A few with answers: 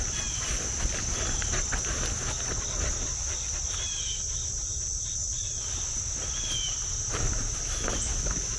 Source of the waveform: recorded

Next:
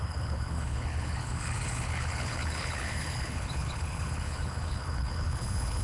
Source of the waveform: remade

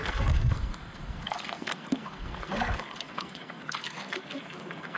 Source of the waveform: remade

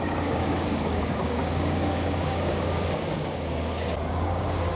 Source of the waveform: remade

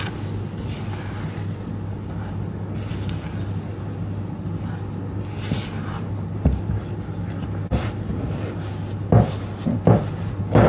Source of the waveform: recorded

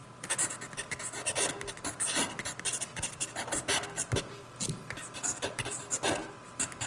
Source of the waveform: recorded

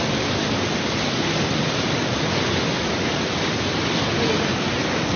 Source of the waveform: recorded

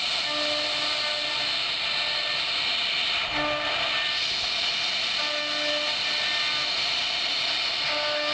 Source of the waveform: recorded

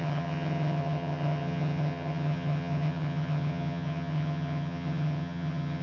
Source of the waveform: remade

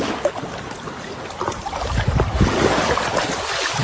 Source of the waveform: recorded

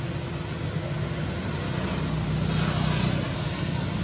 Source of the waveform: recorded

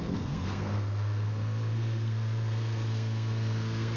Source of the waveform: remade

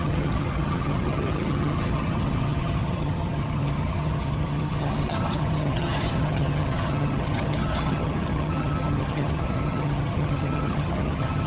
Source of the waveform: remade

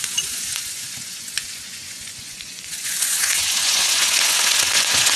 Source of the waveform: remade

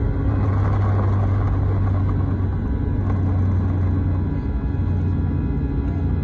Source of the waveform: recorded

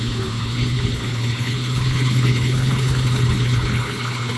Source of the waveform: remade